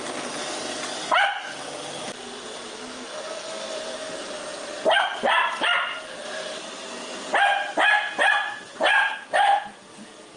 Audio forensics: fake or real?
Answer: real